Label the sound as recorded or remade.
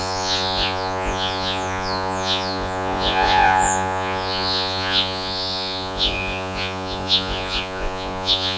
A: remade